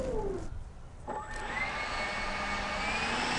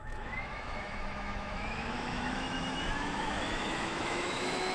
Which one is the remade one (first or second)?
second